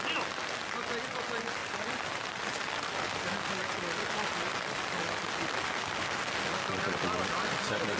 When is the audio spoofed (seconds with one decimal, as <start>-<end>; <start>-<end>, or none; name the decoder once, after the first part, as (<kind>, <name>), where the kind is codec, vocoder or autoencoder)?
1.6-2.5 (vocoder, BigVGAN v2)